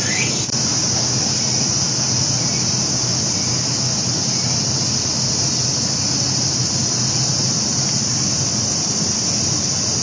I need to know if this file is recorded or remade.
recorded